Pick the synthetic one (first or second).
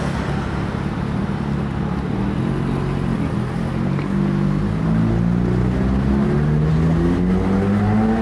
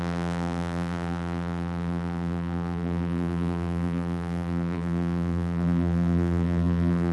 second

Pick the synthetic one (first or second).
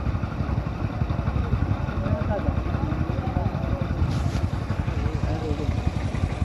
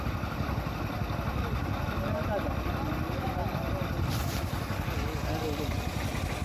first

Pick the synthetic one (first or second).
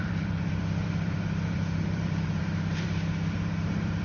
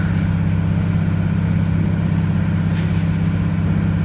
first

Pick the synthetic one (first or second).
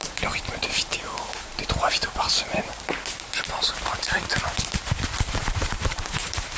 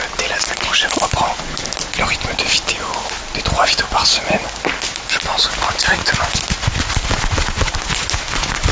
first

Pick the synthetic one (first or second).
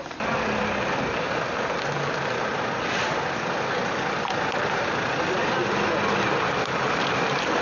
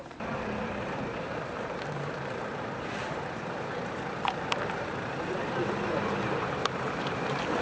second